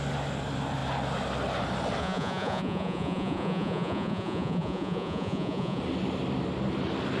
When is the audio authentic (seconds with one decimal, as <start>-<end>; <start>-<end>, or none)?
0.0-2.0; 5.8-7.2